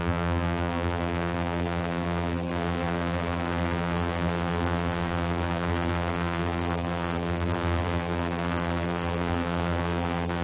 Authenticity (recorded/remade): remade